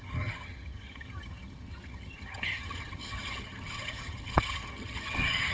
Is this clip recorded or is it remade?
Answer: remade